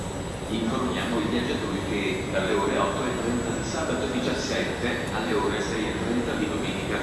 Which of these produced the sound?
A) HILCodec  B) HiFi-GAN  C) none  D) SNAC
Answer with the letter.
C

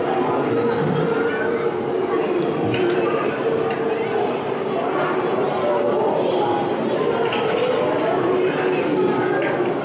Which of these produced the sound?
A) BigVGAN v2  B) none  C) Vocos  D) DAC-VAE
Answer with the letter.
B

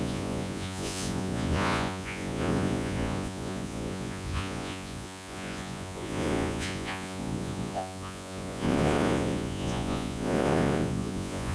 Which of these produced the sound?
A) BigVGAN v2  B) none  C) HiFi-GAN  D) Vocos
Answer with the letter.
D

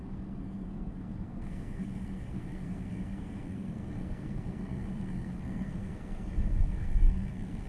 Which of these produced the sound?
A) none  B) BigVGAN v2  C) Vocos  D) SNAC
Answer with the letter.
D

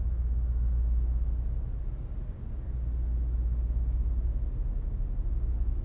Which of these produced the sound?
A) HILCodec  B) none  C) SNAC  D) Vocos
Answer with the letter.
B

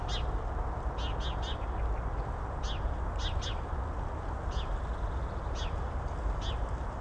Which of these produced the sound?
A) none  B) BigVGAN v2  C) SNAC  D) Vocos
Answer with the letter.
A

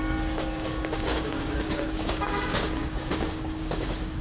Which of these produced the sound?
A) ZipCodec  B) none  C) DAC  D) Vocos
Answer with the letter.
C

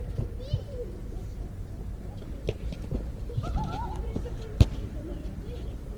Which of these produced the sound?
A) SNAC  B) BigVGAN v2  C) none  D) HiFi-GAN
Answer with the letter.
B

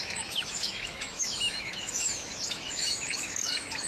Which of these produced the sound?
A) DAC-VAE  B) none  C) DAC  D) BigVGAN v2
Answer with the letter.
A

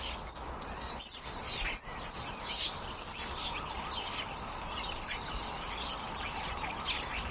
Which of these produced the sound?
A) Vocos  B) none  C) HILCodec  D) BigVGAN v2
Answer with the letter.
B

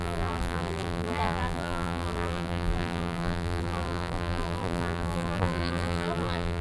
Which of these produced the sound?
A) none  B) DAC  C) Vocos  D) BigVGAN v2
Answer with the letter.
D